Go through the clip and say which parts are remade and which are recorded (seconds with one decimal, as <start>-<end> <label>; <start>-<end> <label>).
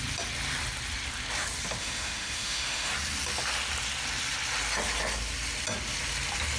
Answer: 0.0-1.8 recorded; 1.8-2.9 remade; 2.9-6.6 recorded